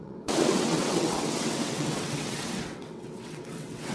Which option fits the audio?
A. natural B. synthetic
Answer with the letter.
B